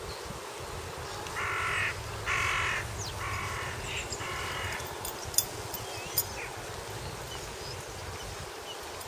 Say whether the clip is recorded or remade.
recorded